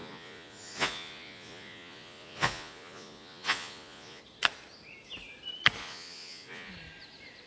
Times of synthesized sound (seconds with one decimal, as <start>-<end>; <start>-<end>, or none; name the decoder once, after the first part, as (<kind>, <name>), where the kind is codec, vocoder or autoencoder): 0.0-4.2 (vocoder, Vocos); 5.8-6.7